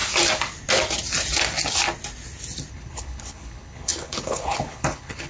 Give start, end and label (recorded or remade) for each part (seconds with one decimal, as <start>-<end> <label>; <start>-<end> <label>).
0.0-2.7 recorded; 2.7-5.3 remade